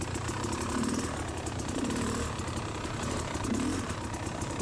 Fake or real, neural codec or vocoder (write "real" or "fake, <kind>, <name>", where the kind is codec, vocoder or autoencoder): fake, vocoder, BigVGAN v2